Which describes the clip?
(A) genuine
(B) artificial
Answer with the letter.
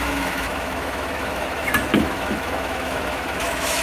B